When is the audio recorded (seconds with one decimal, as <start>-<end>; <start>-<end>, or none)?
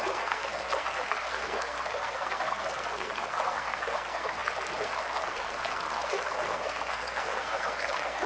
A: none